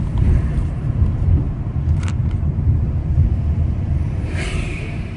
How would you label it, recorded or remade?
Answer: remade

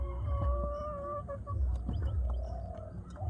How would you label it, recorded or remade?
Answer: recorded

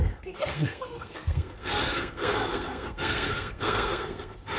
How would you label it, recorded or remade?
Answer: remade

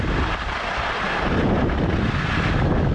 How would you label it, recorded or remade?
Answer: recorded